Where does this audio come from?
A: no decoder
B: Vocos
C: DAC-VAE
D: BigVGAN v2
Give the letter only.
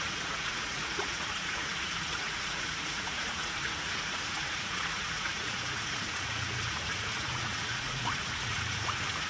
B